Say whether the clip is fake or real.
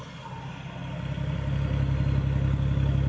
real